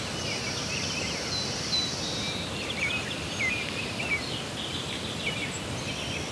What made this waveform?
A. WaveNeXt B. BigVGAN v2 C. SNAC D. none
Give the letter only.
D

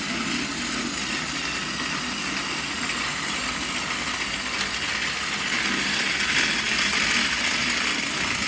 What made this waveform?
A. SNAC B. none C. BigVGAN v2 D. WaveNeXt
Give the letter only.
B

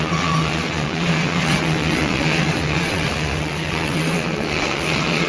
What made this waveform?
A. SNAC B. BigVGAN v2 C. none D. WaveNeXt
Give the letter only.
D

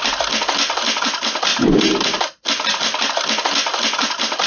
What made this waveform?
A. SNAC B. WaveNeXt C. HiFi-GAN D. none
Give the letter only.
D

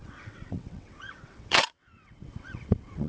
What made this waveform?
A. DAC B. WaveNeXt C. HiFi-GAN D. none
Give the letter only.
B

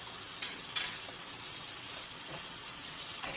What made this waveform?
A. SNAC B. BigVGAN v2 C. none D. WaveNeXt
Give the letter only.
D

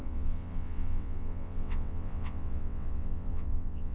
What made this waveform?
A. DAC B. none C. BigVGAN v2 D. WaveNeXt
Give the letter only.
D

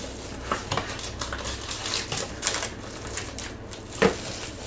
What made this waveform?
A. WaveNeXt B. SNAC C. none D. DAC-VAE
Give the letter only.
C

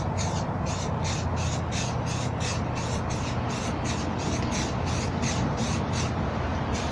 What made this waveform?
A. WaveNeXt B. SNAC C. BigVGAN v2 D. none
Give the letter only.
D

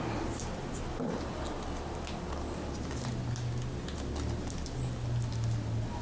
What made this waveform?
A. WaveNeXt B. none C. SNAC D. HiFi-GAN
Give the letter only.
B